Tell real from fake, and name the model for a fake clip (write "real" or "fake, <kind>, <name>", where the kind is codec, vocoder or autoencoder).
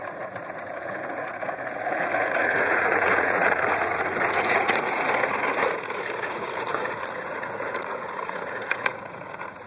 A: fake, vocoder, Vocos